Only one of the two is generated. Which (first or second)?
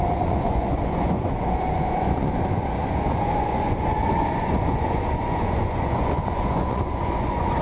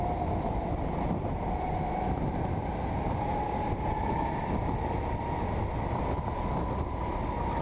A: first